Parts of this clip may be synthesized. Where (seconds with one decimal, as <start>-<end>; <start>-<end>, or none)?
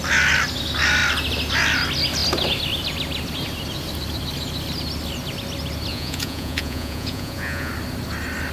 5.9-7.7